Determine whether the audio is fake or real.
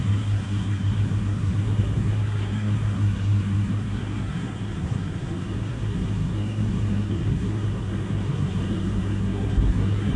fake